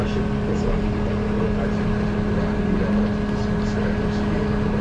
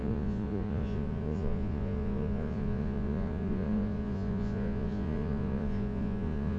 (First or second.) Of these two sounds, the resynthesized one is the second